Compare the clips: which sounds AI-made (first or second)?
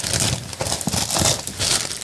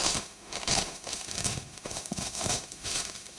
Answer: second